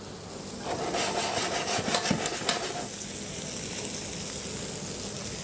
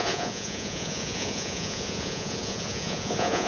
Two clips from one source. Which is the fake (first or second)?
second